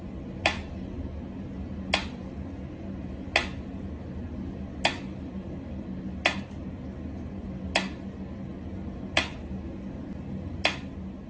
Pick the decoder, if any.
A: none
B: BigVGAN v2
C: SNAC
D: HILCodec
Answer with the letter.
A